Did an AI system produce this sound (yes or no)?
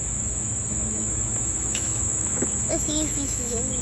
yes